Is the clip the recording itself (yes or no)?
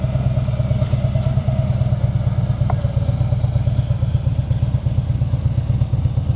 yes